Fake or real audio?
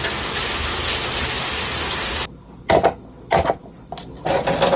real